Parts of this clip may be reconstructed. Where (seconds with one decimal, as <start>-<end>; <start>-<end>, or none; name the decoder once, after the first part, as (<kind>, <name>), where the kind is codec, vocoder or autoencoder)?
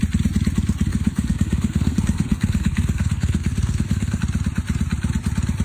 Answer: 0.9-4.2 (codec, SNAC)